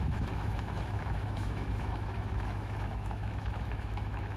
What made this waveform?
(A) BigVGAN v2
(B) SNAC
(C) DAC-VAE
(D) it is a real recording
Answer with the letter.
C